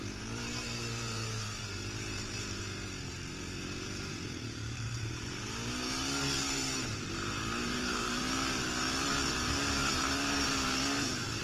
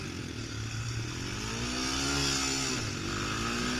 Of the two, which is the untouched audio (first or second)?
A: second